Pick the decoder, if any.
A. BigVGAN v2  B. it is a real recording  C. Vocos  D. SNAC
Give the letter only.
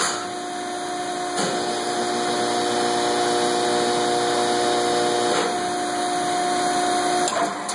B